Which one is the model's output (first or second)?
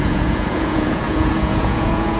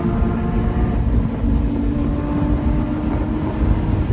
first